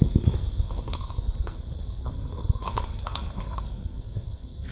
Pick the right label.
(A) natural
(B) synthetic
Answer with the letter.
B